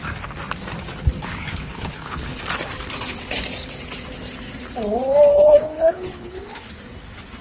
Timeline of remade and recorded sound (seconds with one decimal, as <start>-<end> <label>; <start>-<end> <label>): 0.0-1.3 recorded; 1.3-2.4 remade; 2.4-5.3 recorded; 5.3-6.7 remade; 6.7-7.4 recorded